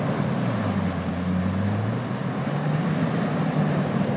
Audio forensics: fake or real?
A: real